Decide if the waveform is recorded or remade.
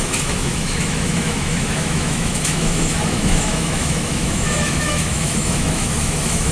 remade